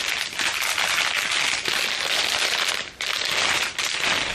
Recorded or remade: recorded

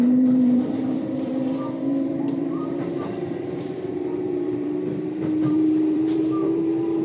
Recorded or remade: remade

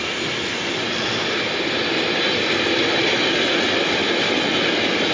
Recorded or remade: recorded